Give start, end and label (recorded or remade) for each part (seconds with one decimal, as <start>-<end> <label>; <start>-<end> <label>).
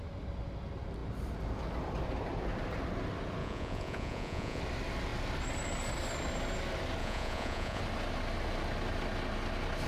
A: 0.0-3.4 recorded; 3.4-4.6 remade; 4.6-7.0 recorded; 7.0-7.8 remade; 7.8-9.9 recorded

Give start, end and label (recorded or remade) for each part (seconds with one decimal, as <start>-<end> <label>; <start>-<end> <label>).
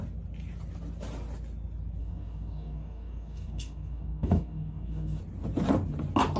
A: 0.0-2.0 recorded; 2.0-5.2 remade; 5.2-6.4 recorded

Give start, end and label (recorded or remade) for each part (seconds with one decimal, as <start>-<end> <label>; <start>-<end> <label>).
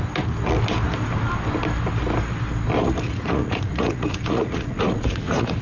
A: 0.0-2.8 recorded; 2.8-5.6 remade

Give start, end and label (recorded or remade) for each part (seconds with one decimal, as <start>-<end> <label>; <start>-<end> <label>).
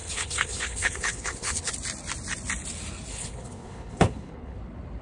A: 0.0-1.7 remade; 1.7-3.1 recorded; 3.1-4.6 remade; 4.6-5.0 recorded